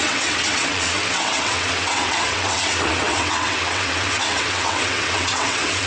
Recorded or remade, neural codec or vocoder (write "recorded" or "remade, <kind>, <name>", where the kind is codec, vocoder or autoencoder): remade, vocoder, WaveNeXt